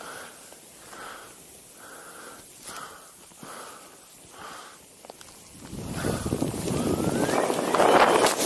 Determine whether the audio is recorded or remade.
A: recorded